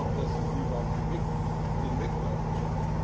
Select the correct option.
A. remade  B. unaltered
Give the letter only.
B